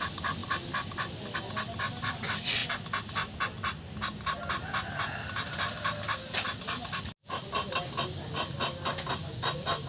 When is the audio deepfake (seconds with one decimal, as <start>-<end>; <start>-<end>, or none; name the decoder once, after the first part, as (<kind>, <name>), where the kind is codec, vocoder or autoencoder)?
none